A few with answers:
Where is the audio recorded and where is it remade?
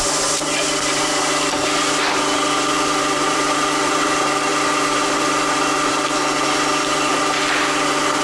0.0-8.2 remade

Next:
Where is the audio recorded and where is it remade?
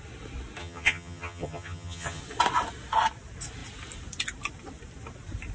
0.0-0.6 recorded; 0.6-2.2 remade; 2.2-5.5 recorded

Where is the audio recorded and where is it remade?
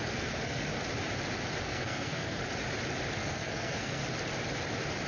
0.0-0.7 remade; 0.7-1.6 recorded; 1.6-2.4 remade; 2.4-3.2 recorded; 3.2-4.0 remade; 4.0-5.1 recorded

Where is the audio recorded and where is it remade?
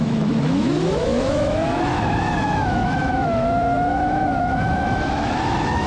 0.0-5.9 remade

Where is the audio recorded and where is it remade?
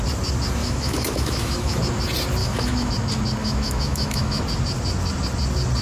0.0-0.6 recorded; 0.6-1.8 remade; 1.8-2.4 recorded; 2.4-2.9 remade; 2.9-3.4 recorded; 3.4-4.4 remade; 4.4-5.8 recorded